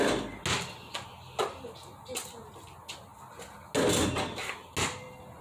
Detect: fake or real real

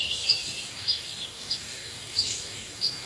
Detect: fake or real fake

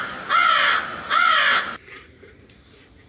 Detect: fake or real fake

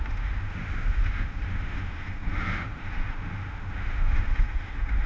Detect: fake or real fake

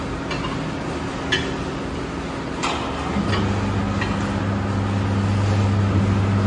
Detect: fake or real real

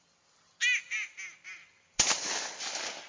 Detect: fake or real real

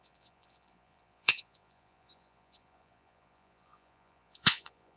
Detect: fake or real fake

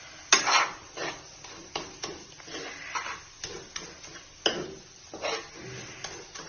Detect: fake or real real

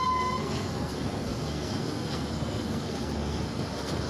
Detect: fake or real fake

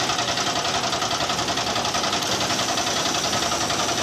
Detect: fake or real real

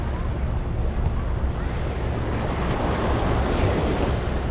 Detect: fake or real real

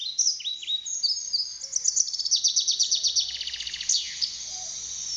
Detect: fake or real real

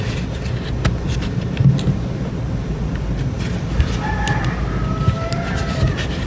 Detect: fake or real real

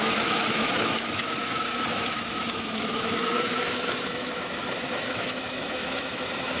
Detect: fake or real fake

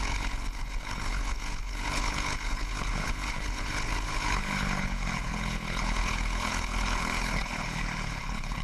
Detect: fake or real fake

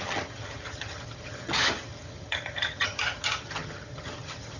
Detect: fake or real fake